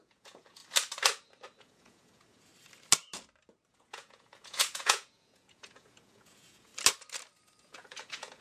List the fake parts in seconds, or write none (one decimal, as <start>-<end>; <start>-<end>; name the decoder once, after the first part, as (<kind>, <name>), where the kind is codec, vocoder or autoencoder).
0.0-0.6 (vocoder, Vocos); 1.6-2.5; 3.7-6.7; 7.6-8.4